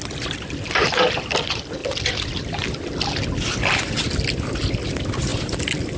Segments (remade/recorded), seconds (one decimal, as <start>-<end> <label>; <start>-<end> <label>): 0.0-6.0 recorded